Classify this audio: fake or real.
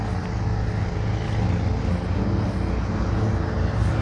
real